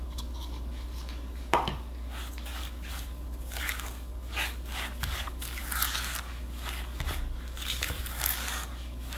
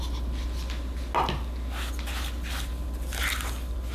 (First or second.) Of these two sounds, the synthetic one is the first